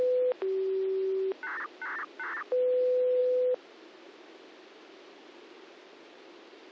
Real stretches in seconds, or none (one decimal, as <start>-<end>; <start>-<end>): 0.0-6.7